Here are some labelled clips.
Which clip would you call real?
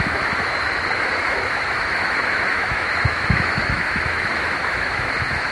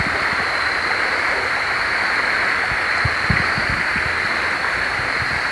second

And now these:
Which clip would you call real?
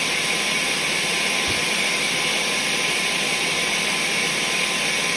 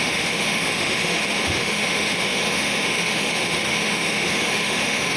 first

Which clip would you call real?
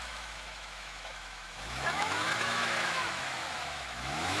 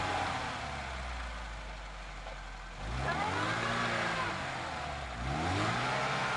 second